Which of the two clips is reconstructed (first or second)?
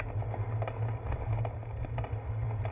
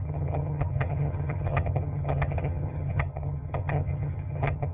second